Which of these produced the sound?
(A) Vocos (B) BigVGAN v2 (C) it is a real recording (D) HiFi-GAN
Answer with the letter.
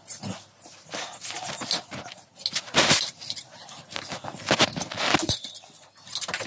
C